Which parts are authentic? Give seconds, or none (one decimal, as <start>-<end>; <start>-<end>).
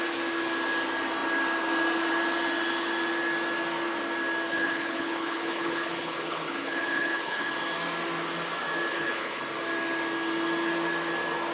0.0-4.5; 7.5-8.9; 9.4-11.5